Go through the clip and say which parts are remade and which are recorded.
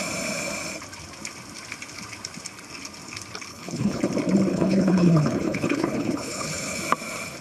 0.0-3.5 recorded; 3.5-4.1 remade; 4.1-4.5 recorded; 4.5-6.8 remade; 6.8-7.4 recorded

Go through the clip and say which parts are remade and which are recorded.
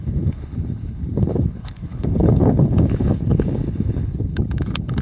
0.0-5.0 remade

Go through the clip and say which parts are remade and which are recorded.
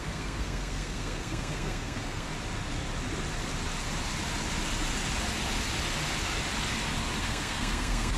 0.0-2.3 remade; 2.3-7.2 recorded; 7.2-8.2 remade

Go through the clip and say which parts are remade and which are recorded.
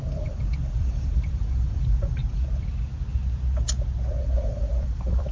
0.0-2.2 remade; 2.2-4.2 recorded; 4.2-5.3 remade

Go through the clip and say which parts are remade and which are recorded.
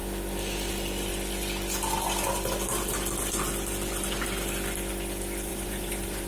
0.0-5.5 recorded; 5.5-6.3 remade